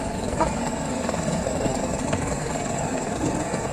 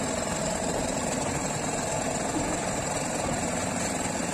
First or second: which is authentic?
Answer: second